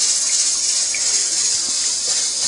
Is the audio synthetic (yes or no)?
no